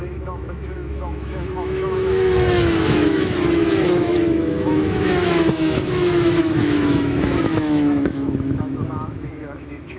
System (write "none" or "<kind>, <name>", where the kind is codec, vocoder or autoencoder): autoencoder, DAC-VAE